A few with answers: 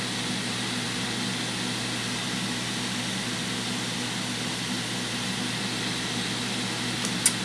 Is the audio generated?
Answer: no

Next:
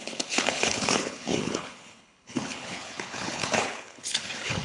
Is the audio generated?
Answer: yes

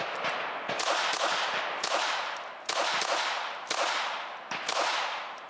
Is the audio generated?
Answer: no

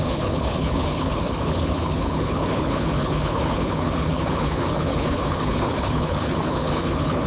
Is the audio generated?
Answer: yes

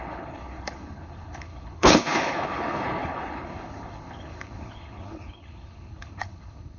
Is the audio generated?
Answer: yes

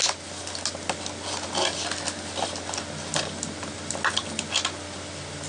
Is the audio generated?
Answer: no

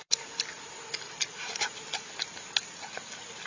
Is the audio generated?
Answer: no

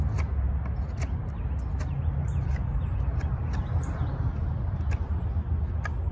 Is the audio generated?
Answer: no